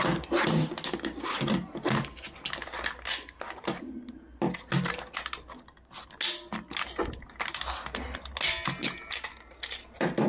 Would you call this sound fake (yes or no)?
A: no